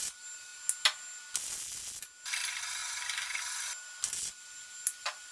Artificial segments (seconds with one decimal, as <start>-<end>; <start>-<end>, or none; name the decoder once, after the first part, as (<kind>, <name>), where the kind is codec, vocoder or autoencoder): none

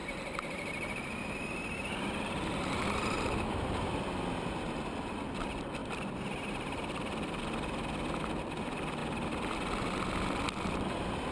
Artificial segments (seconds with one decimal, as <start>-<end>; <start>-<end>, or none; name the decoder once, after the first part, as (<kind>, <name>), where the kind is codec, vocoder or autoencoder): 0.0-3.8 (vocoder, BigVGAN v2); 5.8-7.4

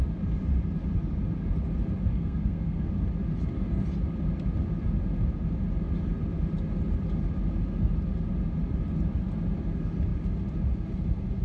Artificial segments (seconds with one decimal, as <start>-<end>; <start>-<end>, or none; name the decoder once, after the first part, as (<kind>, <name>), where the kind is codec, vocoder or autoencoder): 2.1-2.9 (codec, SNAC)